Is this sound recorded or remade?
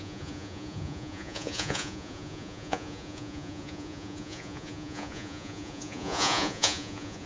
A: remade